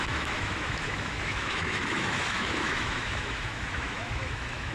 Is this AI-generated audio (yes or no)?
yes